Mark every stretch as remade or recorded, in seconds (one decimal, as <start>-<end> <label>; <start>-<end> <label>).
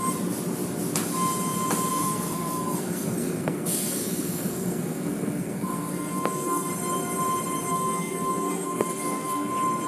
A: 0.0-1.9 recorded; 1.9-6.7 remade; 6.7-7.7 recorded; 7.7-9.5 remade; 9.5-9.9 recorded